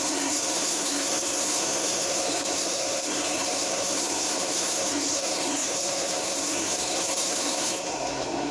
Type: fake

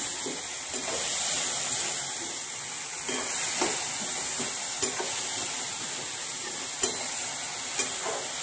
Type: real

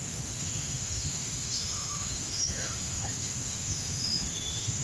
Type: fake